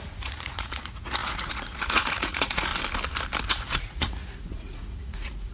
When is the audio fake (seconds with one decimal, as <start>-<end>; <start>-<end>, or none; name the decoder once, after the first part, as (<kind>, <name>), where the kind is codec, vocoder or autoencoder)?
0.0-2.7 (vocoder, Vocos); 3.5-5.5